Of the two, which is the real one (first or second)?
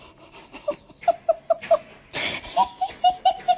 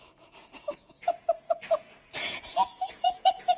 first